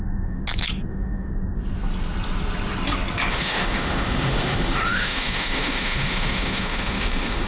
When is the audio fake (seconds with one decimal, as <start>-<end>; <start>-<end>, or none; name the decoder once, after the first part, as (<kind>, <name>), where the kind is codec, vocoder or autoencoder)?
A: 0.0-0.4 (autoencoder, DAC-VAE); 0.9-1.3; 3.3-7.5